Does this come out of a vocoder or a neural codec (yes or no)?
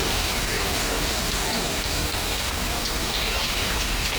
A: yes